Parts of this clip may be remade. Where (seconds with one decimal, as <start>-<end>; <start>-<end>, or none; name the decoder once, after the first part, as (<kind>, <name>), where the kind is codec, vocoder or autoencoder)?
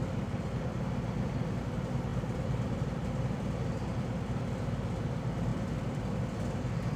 2.1-3.4 (vocoder, BigVGAN v2); 5.5-6.2